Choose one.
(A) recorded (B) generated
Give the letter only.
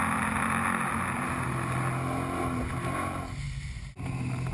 A